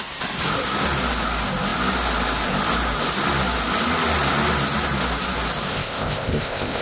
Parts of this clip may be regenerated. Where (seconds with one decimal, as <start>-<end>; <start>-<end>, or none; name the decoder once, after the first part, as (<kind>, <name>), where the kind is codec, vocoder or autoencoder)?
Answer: 5.7-6.8 (codec, ZipCodec)